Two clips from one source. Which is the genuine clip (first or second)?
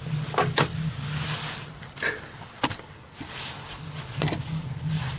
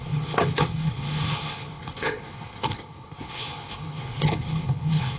first